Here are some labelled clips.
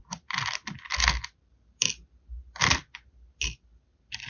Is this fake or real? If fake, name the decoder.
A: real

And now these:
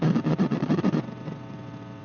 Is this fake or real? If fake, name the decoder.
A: fake, vocoder, WaveNeXt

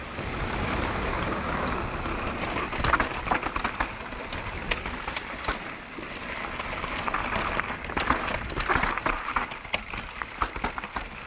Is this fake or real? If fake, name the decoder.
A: real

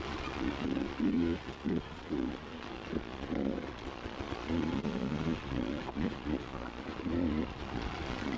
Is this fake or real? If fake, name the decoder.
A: fake, vocoder, Vocos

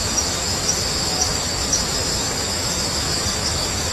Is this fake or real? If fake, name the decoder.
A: fake, autoencoder, DAC-VAE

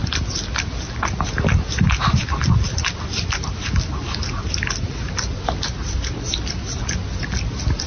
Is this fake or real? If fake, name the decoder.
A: real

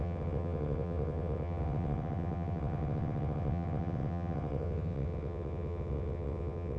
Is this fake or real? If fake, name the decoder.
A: fake, vocoder, WaveNeXt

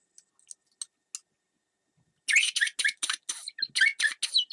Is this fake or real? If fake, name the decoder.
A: real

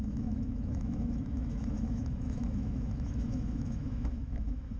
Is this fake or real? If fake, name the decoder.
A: fake, autoencoder, DAC-VAE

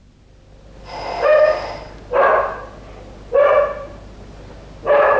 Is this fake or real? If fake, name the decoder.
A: real